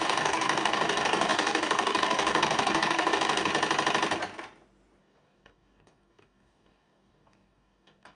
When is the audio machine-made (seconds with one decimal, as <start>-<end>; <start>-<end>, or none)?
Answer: 0.0-3.5; 5.0-8.1